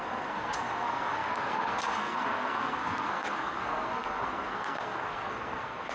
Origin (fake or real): fake